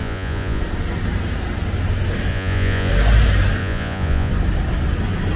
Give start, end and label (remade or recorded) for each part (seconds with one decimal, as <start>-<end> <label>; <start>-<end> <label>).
0.0-0.6 remade; 0.6-2.3 recorded; 2.3-2.9 remade; 2.9-3.6 recorded; 3.6-4.3 remade; 4.3-5.4 recorded